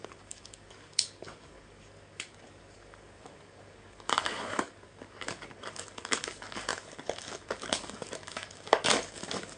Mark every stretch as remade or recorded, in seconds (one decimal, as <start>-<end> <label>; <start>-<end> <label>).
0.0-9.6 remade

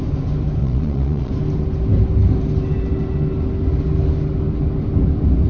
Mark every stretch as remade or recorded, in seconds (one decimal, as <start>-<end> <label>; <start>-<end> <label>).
0.0-0.6 recorded; 0.6-1.3 remade; 1.3-5.5 recorded

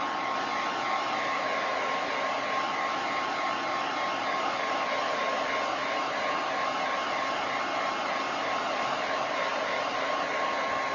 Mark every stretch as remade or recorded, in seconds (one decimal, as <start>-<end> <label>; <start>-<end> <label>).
0.0-10.9 recorded

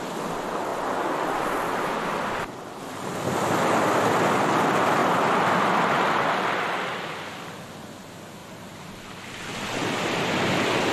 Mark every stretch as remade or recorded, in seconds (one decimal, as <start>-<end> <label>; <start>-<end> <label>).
0.0-8.4 recorded; 8.4-9.2 remade; 9.2-10.9 recorded

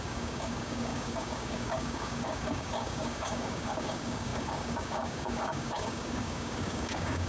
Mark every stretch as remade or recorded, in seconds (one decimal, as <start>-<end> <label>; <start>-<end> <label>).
0.0-7.3 remade